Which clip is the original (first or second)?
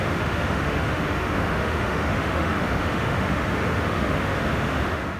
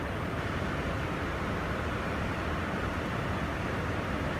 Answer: second